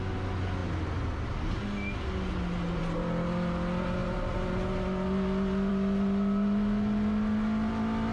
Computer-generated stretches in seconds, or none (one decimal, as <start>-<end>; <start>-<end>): none